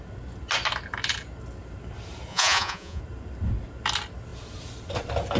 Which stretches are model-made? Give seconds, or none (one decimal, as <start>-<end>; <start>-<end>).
2.3-3.0